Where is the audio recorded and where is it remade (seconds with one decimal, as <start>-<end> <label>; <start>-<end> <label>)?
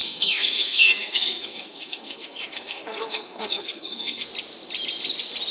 0.0-4.3 remade; 4.3-5.5 recorded